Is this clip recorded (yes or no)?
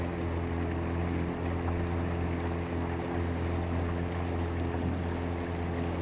yes